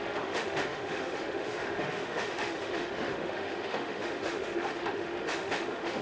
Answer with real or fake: fake